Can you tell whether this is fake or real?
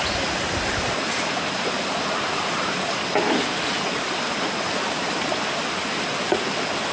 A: real